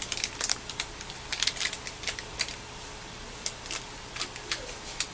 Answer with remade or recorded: recorded